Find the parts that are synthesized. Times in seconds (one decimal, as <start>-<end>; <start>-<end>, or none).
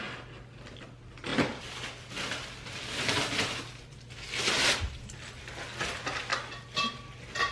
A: none